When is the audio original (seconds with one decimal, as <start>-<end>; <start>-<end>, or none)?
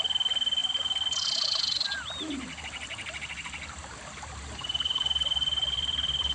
0.0-3.8; 5.1-6.3